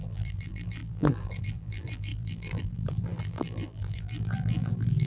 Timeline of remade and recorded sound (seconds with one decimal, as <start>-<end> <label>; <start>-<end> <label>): 0.0-5.1 remade